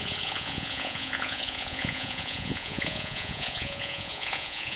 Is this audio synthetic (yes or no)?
yes